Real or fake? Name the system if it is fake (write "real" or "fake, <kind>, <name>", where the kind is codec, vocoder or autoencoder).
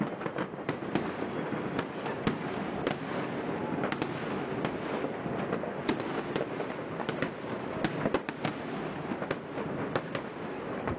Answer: real